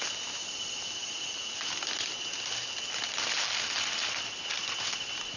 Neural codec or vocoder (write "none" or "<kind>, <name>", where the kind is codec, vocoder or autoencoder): none